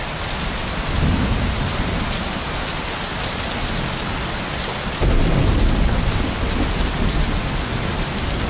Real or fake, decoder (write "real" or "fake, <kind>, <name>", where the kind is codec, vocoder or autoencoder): real